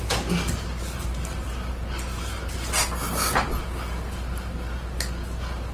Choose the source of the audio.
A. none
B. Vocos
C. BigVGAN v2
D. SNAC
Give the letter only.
A